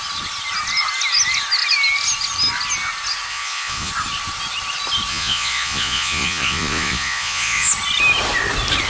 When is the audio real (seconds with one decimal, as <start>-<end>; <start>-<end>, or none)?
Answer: 0.0-3.3; 3.9-5.1; 7.7-8.9